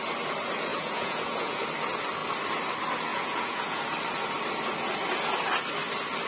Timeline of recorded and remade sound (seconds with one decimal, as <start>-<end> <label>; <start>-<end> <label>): 0.0-0.7 recorded; 0.7-1.6 remade; 1.6-3.1 recorded; 3.1-3.8 remade; 3.8-6.3 recorded